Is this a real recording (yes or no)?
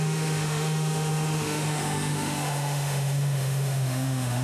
no